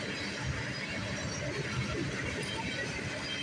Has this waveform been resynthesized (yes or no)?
no